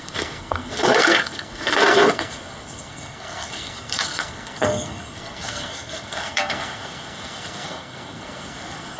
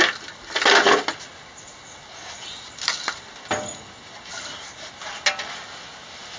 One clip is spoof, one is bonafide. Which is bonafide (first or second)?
second